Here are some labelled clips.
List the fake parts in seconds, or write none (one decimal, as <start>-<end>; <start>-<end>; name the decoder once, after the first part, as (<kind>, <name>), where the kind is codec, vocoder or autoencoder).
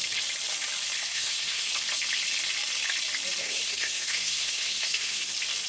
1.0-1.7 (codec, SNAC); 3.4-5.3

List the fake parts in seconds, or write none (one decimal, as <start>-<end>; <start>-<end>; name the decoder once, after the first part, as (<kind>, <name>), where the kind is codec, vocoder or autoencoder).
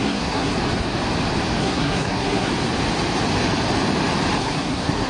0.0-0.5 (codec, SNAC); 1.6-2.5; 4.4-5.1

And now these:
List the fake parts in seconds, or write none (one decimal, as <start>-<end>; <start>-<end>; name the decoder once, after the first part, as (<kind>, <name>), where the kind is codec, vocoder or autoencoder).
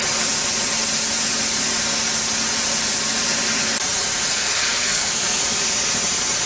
4.3-5.4 (codec, SNAC)